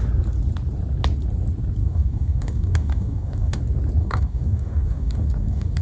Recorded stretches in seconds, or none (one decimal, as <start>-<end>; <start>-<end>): 0.0-1.8; 3.6-4.0